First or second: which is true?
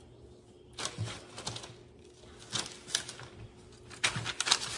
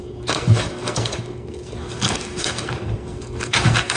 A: first